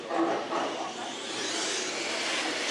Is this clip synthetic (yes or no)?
no